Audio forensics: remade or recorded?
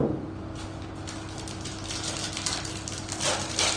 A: recorded